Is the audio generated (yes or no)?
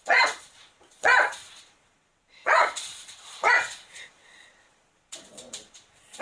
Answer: yes